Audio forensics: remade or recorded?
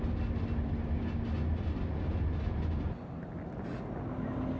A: recorded